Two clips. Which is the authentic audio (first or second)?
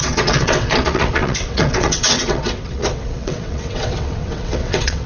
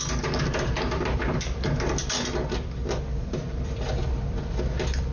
second